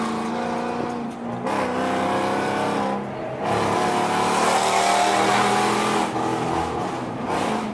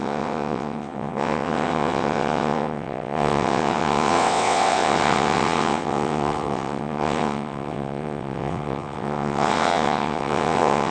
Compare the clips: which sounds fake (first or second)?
second